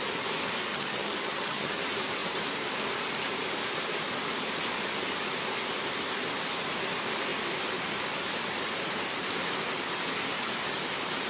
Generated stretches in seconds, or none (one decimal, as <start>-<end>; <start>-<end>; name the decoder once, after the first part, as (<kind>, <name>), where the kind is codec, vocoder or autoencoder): 0.7-1.8 (vocoder, HiFi-GAN)